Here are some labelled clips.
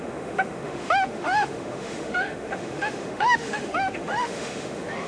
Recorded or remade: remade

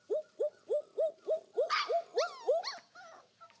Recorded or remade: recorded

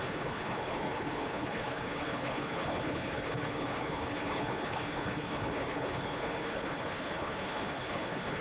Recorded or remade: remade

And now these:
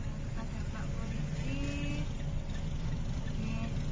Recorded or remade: recorded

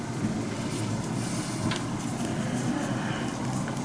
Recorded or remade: recorded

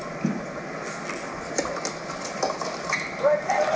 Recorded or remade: recorded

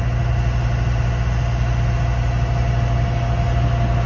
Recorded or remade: recorded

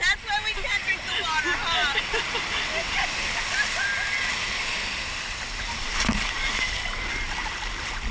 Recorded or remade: recorded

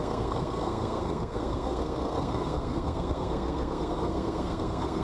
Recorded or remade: remade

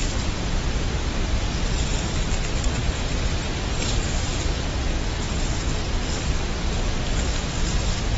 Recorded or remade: recorded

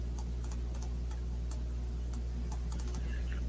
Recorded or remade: recorded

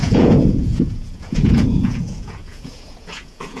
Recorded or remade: remade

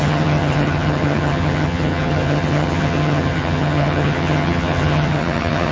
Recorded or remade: remade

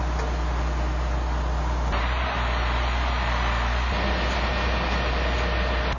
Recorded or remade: recorded